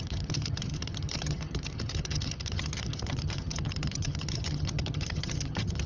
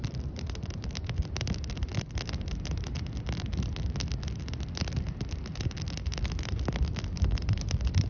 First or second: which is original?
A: second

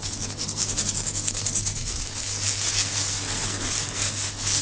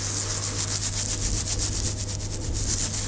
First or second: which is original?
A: second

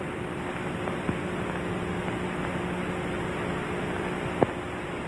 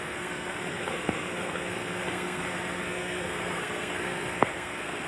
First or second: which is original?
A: first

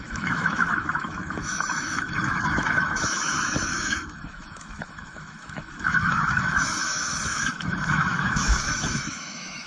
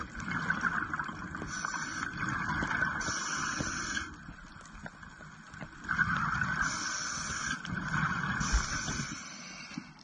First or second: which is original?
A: second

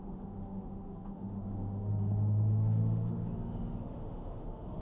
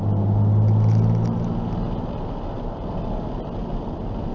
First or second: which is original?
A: second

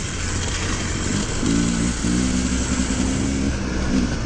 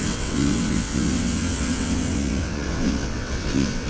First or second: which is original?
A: first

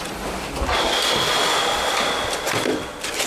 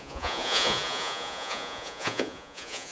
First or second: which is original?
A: first